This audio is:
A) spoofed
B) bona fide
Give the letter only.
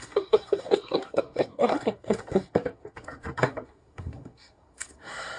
A